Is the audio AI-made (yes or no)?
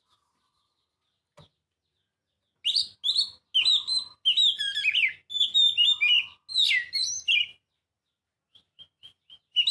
no